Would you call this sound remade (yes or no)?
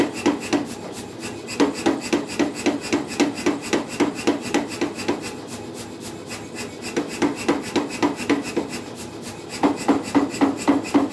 no